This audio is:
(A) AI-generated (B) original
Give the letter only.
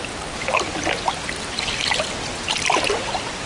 B